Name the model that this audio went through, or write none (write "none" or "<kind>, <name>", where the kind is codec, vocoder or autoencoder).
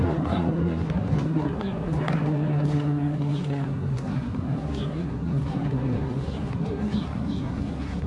codec, SNAC